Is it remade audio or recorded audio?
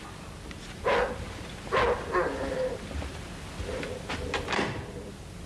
recorded